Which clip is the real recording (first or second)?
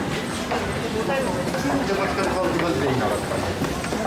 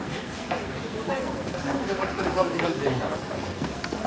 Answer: first